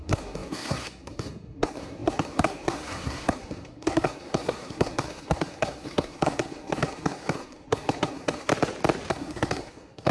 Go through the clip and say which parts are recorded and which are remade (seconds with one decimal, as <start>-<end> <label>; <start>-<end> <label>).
0.0-8.5 remade; 8.5-9.1 recorded; 9.1-10.1 remade